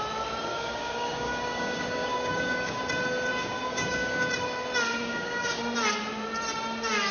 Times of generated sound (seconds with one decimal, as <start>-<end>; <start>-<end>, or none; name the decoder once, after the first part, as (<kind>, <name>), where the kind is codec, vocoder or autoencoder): 0.5-2.8 (codec, DAC); 3.3-4.3; 5.0-5.6